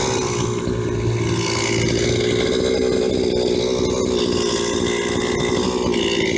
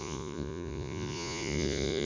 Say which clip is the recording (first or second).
first